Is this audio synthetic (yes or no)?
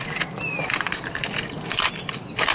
no